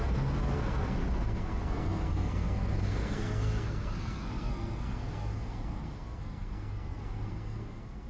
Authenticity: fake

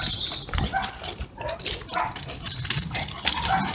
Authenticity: real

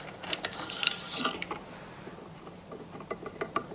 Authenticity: real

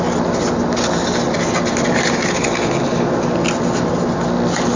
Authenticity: real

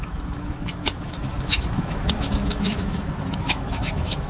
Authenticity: fake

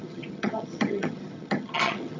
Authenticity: fake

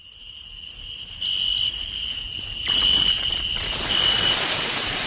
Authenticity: real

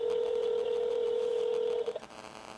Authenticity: fake